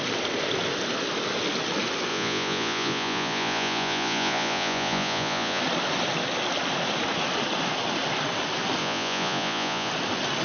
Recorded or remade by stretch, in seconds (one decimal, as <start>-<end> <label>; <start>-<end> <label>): 0.0-2.1 recorded; 2.1-5.6 remade; 5.6-8.8 recorded; 8.8-9.9 remade; 9.9-10.4 recorded